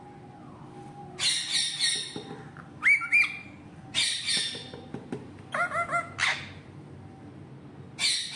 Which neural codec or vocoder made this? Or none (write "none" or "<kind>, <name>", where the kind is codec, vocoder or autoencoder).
none